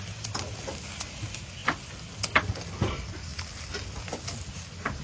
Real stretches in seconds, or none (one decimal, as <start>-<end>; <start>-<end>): 0.0-5.0